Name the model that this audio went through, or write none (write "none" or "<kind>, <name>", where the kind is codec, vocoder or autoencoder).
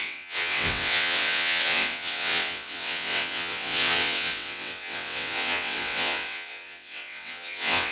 vocoder, WaveNeXt